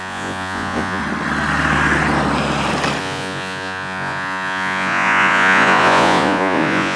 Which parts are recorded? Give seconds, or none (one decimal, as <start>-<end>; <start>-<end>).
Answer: 1.0-3.0